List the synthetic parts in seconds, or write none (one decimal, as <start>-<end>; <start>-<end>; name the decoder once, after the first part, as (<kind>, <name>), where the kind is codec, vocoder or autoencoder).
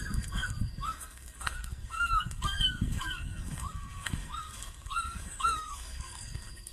0.0-6.7 (codec, SNAC)